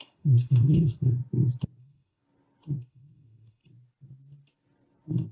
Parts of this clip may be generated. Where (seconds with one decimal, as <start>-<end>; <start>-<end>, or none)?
0.0-1.2; 1.8-2.2; 2.9-3.6